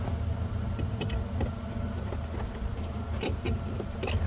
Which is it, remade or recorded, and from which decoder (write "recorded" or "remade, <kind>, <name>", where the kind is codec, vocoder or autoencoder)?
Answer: remade, vocoder, BigVGAN v2